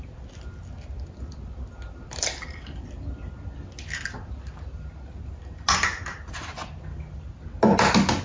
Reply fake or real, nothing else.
real